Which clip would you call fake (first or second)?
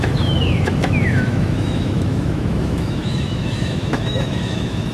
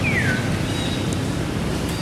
first